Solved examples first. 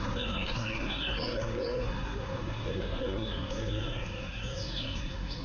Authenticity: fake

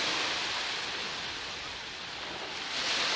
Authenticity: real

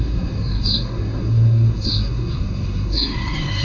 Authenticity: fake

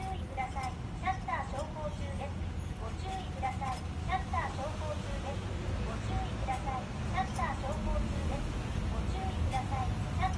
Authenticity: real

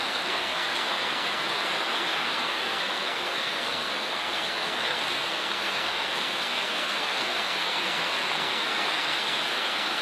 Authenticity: fake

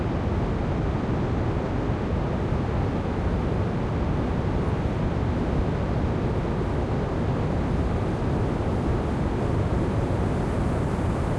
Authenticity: real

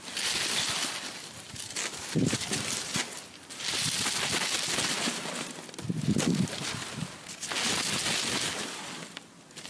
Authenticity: real